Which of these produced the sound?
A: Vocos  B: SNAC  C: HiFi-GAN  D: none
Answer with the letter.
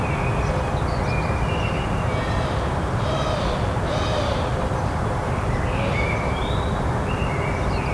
D